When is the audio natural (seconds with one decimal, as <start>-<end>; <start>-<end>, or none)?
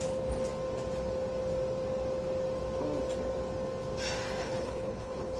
0.0-4.4